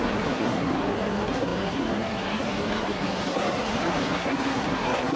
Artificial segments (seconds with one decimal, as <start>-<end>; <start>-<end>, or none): 0.0-5.2